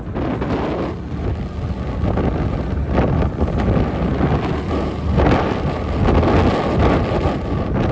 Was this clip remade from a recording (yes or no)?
no